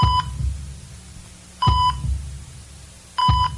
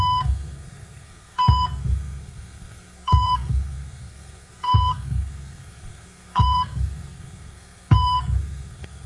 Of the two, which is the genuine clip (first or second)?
first